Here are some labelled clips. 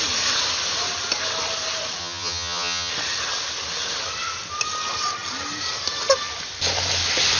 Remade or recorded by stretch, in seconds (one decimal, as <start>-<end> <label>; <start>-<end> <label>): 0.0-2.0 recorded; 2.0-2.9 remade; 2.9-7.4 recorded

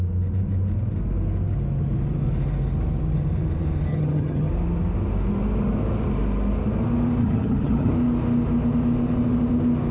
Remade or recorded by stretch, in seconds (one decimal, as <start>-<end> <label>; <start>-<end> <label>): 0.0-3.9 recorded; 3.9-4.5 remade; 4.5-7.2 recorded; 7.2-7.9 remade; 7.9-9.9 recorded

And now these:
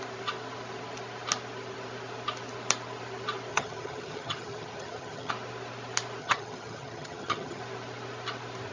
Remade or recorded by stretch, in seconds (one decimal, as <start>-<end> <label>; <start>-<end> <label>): 0.0-3.5 recorded; 3.5-5.3 remade; 5.3-6.2 recorded; 6.2-7.6 remade; 7.6-8.7 recorded

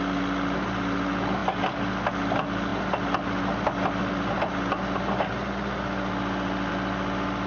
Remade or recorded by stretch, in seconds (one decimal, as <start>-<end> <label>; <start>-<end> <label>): 0.0-7.5 recorded

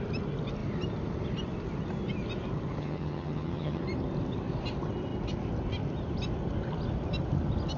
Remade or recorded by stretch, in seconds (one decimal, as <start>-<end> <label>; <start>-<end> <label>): 0.0-2.8 recorded; 2.8-3.8 remade; 3.8-7.8 recorded